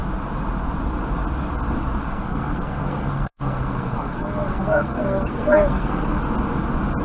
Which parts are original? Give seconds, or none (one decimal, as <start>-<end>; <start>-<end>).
0.0-2.0; 6.2-7.0